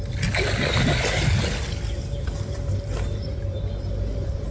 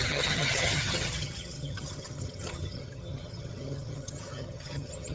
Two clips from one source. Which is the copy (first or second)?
second